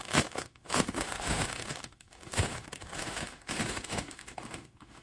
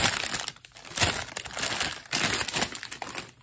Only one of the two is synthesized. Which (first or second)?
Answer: first